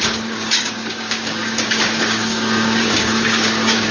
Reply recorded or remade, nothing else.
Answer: remade